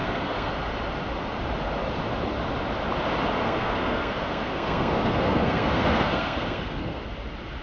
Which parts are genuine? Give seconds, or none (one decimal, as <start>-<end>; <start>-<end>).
0.5-3.4; 7.0-7.6

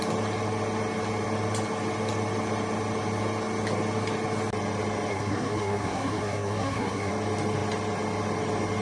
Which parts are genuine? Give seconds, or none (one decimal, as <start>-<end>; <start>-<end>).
0.0-5.1; 7.1-8.8

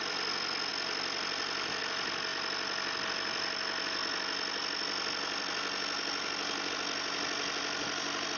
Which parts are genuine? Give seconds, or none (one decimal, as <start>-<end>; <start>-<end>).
0.0-8.4

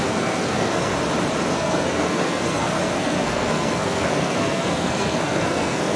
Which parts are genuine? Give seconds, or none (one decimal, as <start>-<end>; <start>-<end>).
0.9-1.5

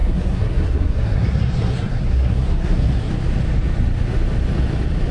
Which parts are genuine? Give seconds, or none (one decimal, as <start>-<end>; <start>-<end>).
3.1-5.1